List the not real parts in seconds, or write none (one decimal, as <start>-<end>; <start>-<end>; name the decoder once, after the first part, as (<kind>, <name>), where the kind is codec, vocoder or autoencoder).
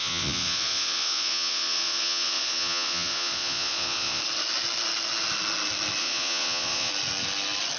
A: 0.0-4.2 (vocoder, Vocos); 6.0-6.9